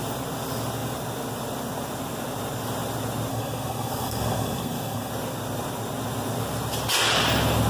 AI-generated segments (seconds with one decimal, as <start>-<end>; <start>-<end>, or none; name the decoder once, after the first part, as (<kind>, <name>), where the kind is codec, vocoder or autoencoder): 3.3-5.1 (codec, SNAC)